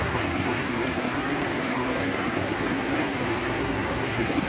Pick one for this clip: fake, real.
fake